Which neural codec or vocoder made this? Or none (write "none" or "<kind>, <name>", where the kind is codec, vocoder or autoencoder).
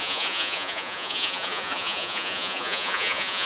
vocoder, Vocos